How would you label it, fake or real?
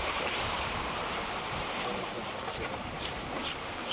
fake